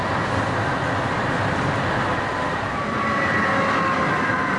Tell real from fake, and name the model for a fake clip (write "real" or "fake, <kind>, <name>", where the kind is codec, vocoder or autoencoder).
real